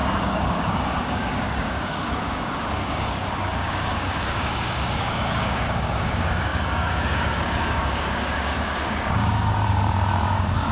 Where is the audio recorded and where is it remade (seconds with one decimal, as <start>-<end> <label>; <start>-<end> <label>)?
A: 0.0-10.7 remade